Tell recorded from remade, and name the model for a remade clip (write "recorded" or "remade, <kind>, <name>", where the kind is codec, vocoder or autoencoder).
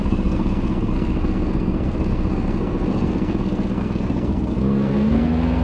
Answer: remade, codec, SNAC